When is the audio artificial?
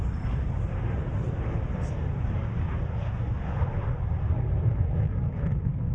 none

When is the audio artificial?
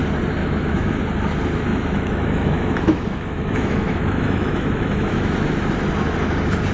0.4-1.0 (autoencoder, DAC-VAE); 1.7-5.3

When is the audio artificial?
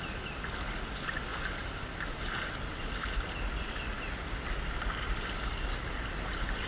none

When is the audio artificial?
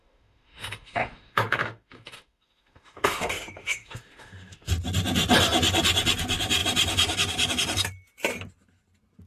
0.0-4.7 (autoencoder, DAC-VAE)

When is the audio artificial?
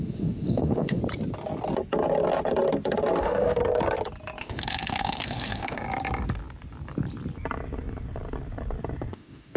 0.0-1.0 (autoencoder, DAC-VAE); 3.2-3.6; 4.4-5.8; 9.1-9.6